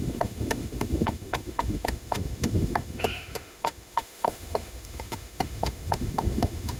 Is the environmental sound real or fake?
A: fake